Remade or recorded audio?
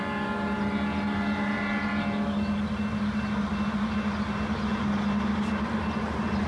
recorded